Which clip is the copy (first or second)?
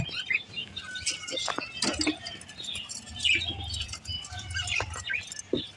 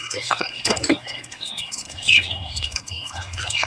second